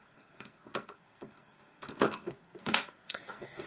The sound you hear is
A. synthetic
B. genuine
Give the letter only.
A